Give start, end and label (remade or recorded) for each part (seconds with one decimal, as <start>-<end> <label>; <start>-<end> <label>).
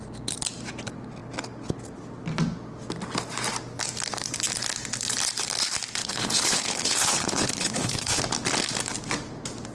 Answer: 0.0-6.0 recorded; 6.0-8.2 remade; 8.2-9.7 recorded